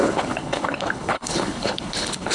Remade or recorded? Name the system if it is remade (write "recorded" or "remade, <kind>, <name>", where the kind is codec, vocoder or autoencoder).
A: remade, codec, HILCodec